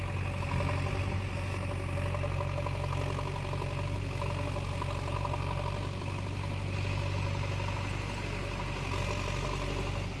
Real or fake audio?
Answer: real